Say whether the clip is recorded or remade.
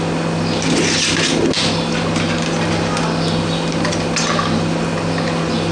recorded